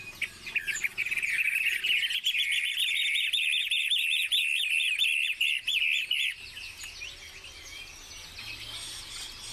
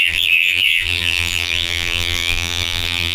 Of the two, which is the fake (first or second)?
second